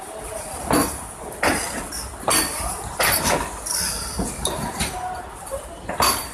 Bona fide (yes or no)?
yes